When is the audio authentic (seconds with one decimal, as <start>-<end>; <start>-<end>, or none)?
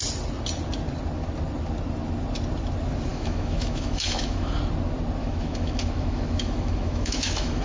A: 0.0-3.1; 4.5-5.2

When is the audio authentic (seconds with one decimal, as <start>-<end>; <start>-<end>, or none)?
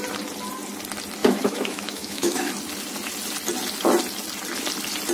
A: 0.0-1.2; 2.5-5.1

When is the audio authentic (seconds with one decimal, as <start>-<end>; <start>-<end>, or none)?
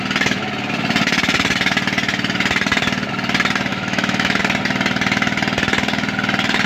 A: 0.0-3.7; 4.4-6.7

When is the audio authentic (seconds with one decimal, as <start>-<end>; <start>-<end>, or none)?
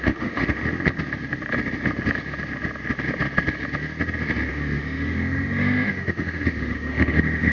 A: 0.6-4.5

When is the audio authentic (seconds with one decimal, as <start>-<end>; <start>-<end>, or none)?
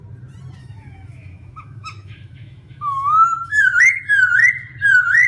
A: 0.0-0.6; 3.8-5.3